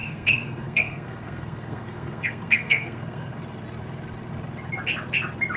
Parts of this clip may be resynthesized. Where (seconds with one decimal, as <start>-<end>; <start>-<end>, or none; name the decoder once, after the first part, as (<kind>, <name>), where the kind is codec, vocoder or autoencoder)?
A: 0.0-3.4 (codec, SNAC)